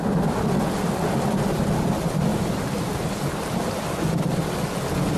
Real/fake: real